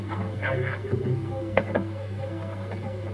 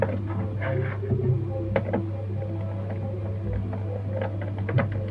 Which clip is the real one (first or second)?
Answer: second